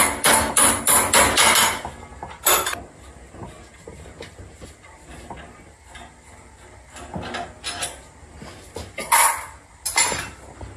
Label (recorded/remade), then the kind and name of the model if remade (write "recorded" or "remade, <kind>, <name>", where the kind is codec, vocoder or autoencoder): recorded